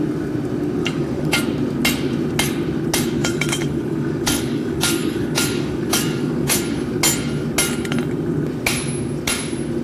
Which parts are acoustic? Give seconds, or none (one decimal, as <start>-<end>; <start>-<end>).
0.0-0.8; 1.4-3.2; 6.6-9.8